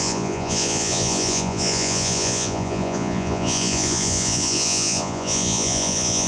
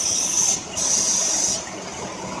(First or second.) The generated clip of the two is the first